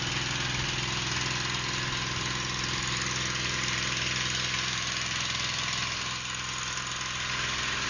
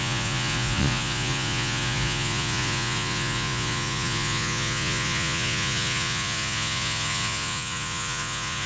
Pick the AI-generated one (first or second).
second